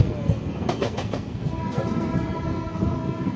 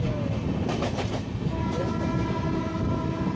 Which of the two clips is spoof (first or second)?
first